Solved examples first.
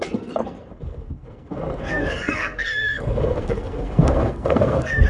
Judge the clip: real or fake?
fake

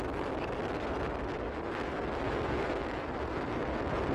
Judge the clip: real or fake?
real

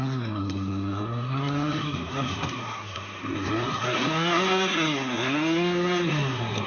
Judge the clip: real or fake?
fake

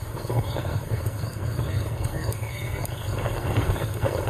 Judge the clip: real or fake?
fake